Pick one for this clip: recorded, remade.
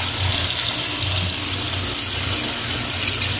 recorded